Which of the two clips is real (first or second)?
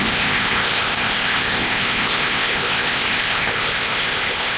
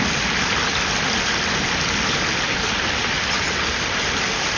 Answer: second